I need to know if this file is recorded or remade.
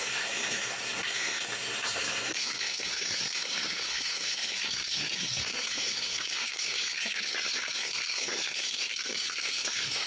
remade